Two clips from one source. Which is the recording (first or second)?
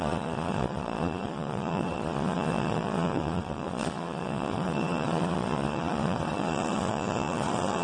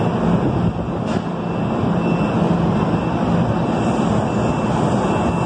second